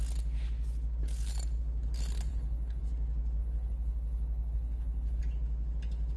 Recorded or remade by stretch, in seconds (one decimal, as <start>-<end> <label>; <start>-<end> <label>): 0.0-2.3 recorded; 2.3-2.8 remade; 2.8-3.4 recorded; 3.4-5.2 remade; 5.2-6.2 recorded